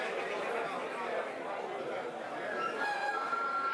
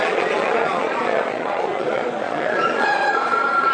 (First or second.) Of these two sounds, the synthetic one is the second